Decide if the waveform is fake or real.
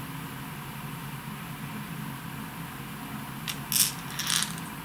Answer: real